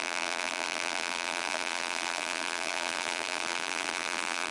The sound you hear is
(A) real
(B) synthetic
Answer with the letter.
B